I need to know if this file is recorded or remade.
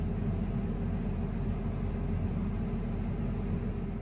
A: recorded